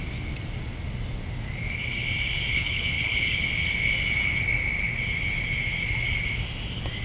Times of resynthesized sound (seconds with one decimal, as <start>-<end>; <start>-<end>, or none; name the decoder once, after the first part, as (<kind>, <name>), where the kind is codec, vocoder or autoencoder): 2.5-3.4 (codec, HILCodec)